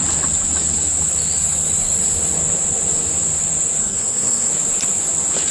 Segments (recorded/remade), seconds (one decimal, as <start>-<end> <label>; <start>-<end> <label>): 0.0-3.8 recorded; 3.8-4.5 remade; 4.5-5.5 recorded